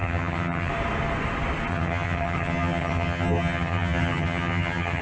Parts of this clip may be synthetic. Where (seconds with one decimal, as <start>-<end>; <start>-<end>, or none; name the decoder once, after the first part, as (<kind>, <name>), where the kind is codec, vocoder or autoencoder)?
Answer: 0.0-0.7 (vocoder, HiFi-GAN); 1.7-5.0